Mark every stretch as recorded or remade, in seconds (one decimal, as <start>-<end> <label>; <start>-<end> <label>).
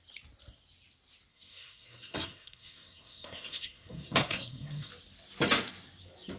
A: 0.0-1.3 recorded; 1.3-4.9 remade; 4.9-6.4 recorded